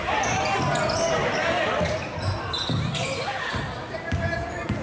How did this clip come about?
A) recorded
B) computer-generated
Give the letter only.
A